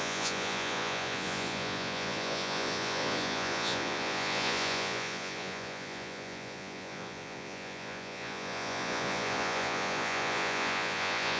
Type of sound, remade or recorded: remade